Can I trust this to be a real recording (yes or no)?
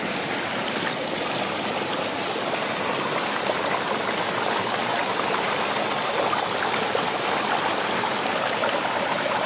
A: yes